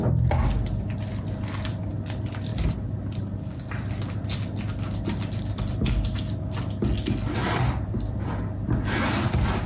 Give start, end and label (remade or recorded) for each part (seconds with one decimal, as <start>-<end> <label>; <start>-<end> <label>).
0.0-7.4 recorded; 7.4-7.9 remade; 7.9-9.7 recorded